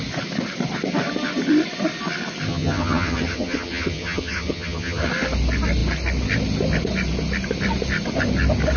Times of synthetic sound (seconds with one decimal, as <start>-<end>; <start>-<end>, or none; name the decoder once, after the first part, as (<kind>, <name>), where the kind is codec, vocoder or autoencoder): 2.5-5.1 (vocoder, HiFi-GAN)